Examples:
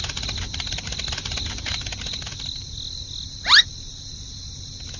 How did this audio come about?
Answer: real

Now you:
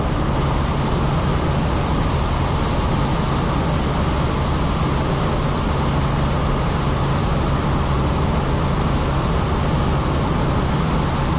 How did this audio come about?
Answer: real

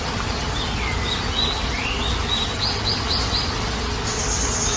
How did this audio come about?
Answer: real